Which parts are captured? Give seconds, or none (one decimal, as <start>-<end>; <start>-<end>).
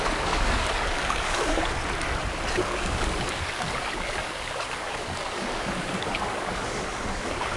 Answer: 1.8-2.5